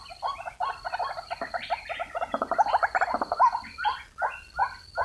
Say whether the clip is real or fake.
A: real